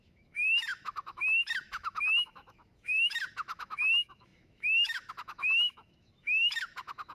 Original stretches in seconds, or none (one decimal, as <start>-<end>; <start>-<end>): none